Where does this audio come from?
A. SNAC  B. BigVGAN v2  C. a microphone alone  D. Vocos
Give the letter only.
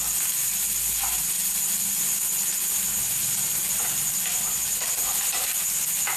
C